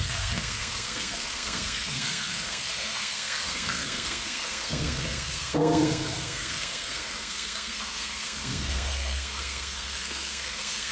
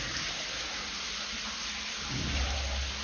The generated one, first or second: first